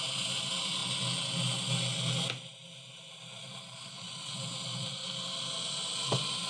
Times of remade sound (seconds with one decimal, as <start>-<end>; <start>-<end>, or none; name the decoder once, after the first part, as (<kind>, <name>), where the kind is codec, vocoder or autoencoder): none